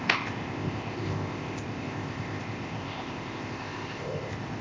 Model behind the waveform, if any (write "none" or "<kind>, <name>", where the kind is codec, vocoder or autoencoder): codec, ZipCodec